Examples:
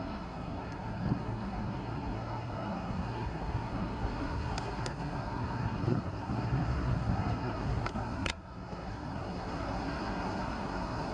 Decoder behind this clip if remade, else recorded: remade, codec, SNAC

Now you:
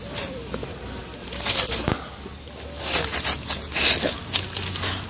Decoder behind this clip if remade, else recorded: recorded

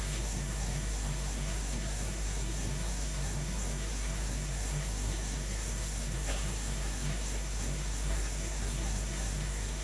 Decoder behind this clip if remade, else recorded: remade, codec, SNAC